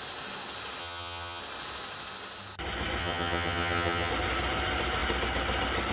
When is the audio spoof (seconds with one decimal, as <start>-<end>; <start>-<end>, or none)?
0.8-1.4; 3.0-4.1